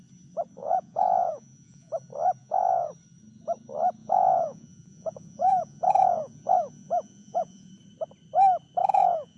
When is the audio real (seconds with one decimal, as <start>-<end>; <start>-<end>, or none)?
0.0-0.6; 1.9-2.4; 2.9-4.0; 7.7-8.8